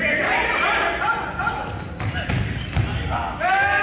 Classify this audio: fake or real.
real